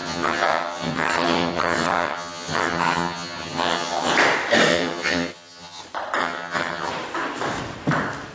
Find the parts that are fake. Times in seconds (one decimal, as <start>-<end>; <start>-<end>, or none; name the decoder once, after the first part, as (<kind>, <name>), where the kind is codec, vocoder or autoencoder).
0.0-4.1 (vocoder, HiFi-GAN); 4.7-5.8; 6.2-6.9